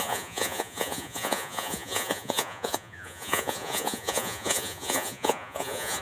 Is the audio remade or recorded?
remade